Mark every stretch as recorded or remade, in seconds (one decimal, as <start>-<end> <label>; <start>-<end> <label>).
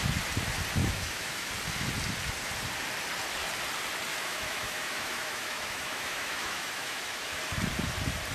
0.0-0.8 recorded; 0.8-1.5 remade; 1.5-4.1 recorded; 4.1-7.4 remade; 7.4-8.3 recorded